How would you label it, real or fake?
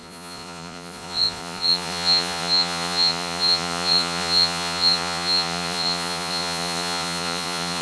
fake